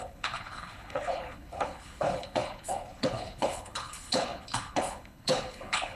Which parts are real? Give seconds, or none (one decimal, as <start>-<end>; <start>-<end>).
none